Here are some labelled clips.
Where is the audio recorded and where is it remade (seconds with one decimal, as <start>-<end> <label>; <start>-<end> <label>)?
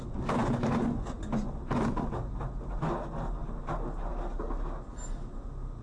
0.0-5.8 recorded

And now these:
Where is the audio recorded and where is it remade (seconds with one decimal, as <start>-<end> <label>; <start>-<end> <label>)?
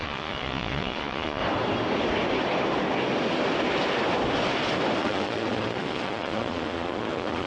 0.0-1.4 remade; 1.4-5.0 recorded; 5.0-7.5 remade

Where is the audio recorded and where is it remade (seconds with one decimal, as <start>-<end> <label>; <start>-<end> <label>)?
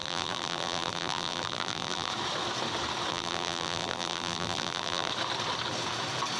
0.0-2.1 remade; 2.1-3.1 recorded; 3.1-5.1 remade; 5.1-6.4 recorded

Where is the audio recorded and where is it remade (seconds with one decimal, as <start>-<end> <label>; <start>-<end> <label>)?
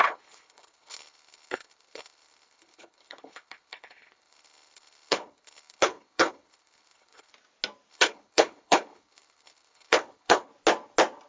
0.0-7.3 remade; 7.3-7.9 recorded; 7.9-10.5 remade; 10.5-11.3 recorded